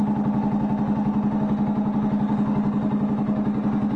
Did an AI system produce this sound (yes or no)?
no